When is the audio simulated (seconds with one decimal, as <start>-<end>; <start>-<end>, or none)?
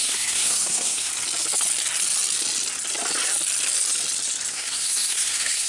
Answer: 0.0-1.1; 4.5-5.7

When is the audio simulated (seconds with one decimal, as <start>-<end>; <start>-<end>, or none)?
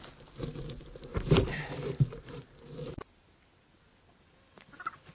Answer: 1.1-3.2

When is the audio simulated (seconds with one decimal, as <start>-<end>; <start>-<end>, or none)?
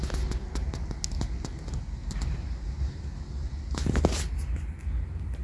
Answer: 2.0-3.0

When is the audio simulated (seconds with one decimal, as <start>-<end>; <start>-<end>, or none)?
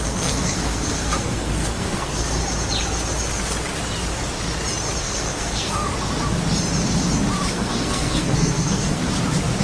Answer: 0.0-2.4; 5.0-5.9; 7.5-9.0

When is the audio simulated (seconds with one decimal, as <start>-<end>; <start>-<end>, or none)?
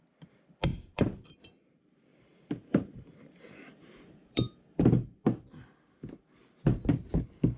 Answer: 0.7-1.2; 2.1-5.2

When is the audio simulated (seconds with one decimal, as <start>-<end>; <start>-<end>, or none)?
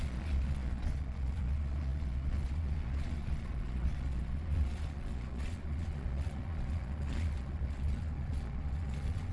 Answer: 0.0-9.3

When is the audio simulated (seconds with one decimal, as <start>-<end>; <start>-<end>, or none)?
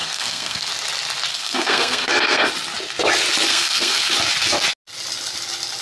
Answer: 0.0-0.7; 1.3-2.5; 3.5-4.1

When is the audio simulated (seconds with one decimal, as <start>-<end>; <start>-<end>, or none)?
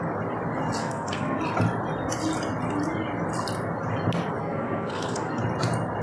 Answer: 0.8-1.4; 4.4-5.4